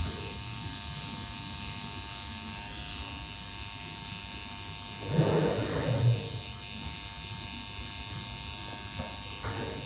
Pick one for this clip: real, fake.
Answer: real